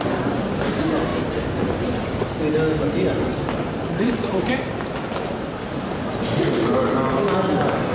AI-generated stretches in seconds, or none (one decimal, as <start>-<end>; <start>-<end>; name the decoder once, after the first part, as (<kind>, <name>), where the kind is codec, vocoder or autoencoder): 3.3-6.2 (vocoder, BigVGAN v2)